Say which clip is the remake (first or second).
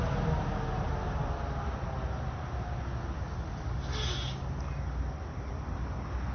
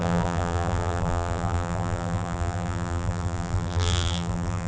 second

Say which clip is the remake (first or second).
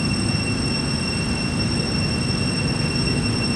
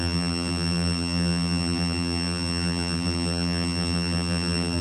second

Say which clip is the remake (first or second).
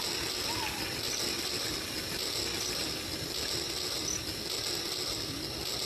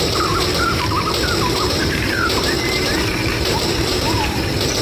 second